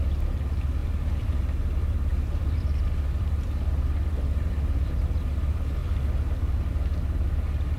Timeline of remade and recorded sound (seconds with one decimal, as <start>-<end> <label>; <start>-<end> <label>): 0.0-0.8 recorded; 0.8-1.4 remade; 1.4-2.1 recorded; 2.1-5.2 remade; 5.2-5.8 recorded; 5.8-6.7 remade; 6.7-7.8 recorded